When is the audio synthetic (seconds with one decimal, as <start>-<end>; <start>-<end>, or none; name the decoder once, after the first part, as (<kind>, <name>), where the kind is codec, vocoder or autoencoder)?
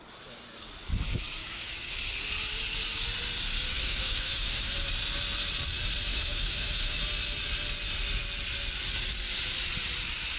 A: 1.4-1.9 (autoencoder, DAC-VAE); 3.7-4.9; 6.1-7.0